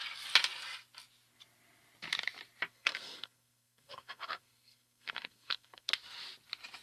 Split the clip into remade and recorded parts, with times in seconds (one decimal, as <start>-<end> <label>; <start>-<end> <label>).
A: 0.0-2.7 recorded; 2.7-5.9 remade; 5.9-6.8 recorded